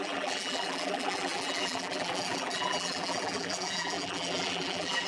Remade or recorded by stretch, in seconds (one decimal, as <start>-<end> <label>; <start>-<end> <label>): 0.0-5.1 remade